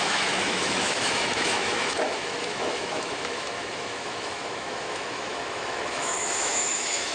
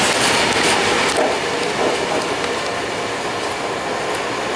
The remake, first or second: first